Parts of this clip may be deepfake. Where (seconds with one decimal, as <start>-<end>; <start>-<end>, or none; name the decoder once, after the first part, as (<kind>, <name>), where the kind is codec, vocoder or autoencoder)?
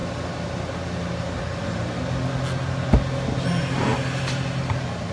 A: none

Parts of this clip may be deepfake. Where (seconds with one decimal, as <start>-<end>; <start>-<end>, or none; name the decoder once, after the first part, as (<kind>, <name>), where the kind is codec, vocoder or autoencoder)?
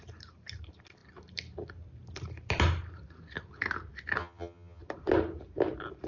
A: 4.2-4.8 (vocoder, HiFi-GAN)